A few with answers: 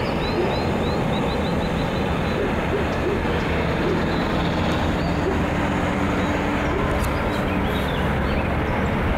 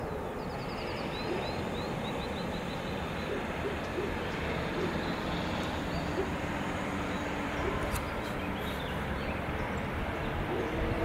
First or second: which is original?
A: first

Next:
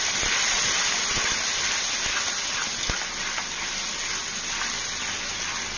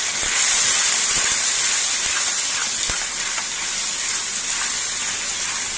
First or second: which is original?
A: first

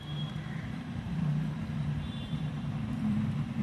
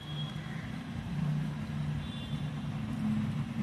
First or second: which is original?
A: second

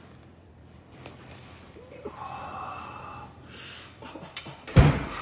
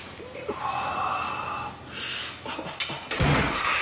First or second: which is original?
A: second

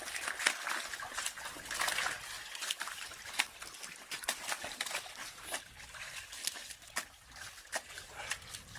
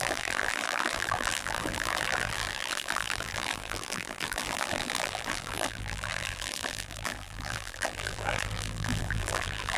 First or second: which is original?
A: first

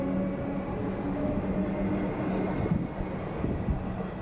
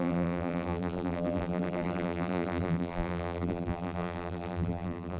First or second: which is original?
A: first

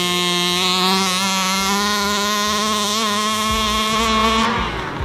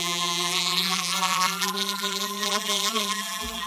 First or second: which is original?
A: first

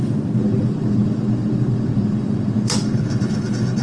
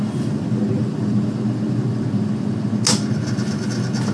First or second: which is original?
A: second